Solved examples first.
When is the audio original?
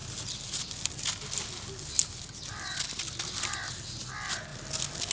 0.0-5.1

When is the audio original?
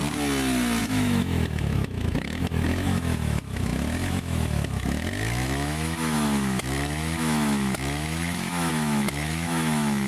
0.0-0.8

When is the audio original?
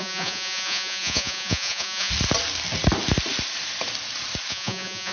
2.1-4.5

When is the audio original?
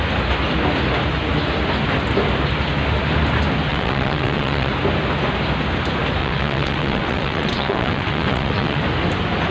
0.0-3.7; 4.7-6.2; 8.8-9.5